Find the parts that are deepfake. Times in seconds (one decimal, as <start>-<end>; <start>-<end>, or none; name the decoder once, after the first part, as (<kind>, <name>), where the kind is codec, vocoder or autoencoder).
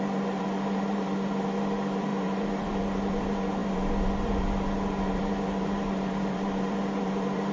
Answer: 0.0-7.5 (vocoder, BigVGAN v2)